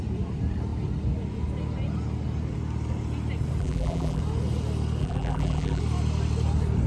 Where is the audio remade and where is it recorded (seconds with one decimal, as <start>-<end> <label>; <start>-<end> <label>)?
0.0-3.6 recorded; 3.6-4.2 remade; 4.2-5.0 recorded; 5.0-5.8 remade; 5.8-6.9 recorded